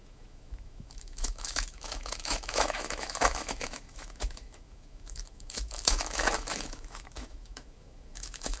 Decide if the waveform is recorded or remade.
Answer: remade